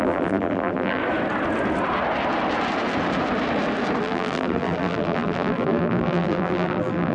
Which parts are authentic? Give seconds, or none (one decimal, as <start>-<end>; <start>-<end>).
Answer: 1.0-4.0